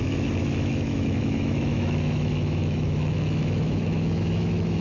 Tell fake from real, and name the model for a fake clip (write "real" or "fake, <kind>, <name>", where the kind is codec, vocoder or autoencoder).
fake, autoencoder, DAC-VAE